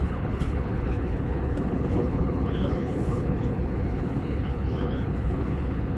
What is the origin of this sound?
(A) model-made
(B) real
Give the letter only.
A